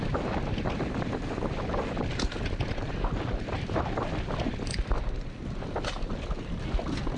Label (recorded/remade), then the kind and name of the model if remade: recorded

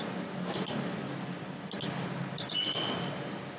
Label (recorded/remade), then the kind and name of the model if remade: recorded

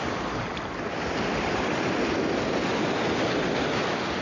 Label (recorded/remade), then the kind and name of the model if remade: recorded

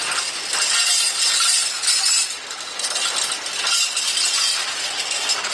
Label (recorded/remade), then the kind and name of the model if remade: recorded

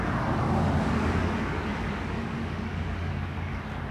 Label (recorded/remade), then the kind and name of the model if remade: remade, codec, DAC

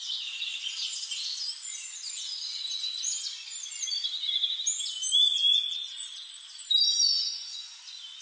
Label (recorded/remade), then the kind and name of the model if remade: recorded